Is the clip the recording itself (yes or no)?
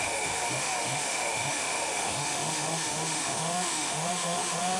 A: no